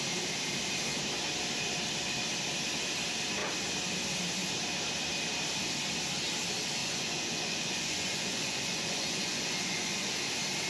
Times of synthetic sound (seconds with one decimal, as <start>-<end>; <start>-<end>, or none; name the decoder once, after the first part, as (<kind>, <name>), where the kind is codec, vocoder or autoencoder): 6.8-10.2 (vocoder, Vocos)